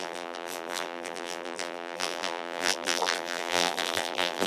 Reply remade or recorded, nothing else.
remade